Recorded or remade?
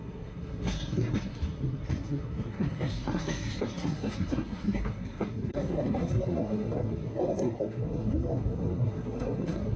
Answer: remade